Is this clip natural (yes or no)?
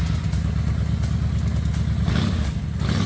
yes